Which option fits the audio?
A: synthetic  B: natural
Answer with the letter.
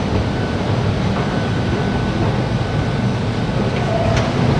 B